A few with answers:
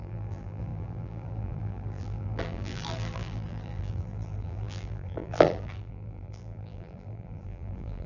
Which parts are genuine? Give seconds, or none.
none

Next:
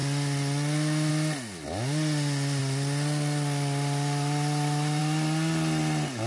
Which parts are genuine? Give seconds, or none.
0.0-6.3

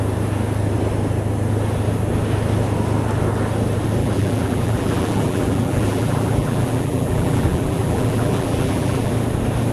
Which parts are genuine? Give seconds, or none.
0.0-4.0; 9.1-9.7

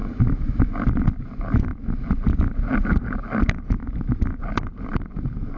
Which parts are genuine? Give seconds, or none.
0.0-1.2; 1.7-3.4; 3.8-4.4

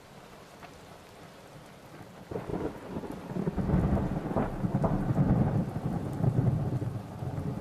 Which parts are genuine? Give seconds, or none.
0.0-7.6

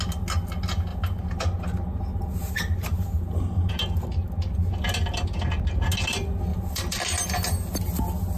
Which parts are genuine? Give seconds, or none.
0.0-0.9; 3.7-6.5; 7.3-8.4

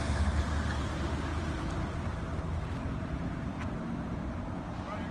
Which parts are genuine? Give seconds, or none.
0.0-1.3; 4.4-5.1

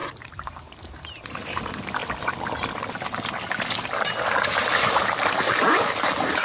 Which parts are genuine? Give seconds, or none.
0.8-6.4